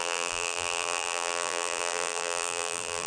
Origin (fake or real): fake